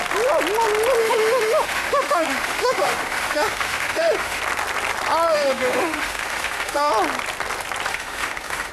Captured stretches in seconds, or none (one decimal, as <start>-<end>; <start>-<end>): 0.0-1.0; 4.4-5.3; 6.9-7.9